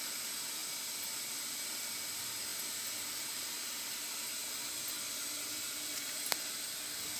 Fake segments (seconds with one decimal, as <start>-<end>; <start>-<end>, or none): 0.0-2.5; 3.3-4.4; 4.9-7.2